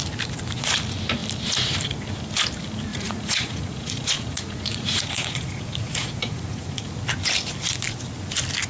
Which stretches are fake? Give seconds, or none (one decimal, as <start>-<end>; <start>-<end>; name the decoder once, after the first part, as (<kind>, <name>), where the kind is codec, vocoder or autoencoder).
2.9-6.9 (vocoder, Vocos)